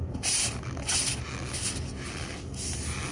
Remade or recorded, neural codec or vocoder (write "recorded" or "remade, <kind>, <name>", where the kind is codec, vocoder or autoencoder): recorded